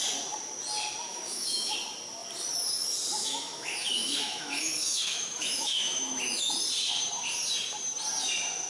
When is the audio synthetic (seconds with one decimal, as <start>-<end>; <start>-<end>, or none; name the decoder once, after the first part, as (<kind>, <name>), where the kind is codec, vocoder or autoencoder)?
1.1-1.7 (autoencoder, DAC-VAE); 3.2-6.5